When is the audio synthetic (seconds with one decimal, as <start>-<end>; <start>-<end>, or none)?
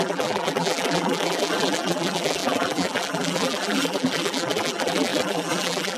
0.0-6.0